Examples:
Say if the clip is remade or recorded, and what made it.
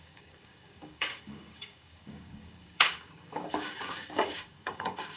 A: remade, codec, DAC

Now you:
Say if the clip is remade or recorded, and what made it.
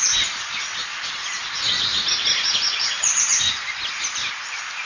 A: recorded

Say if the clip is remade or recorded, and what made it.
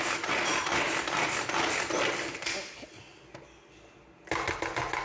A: recorded